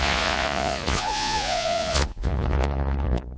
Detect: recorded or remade remade